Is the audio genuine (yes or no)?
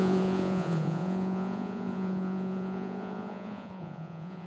no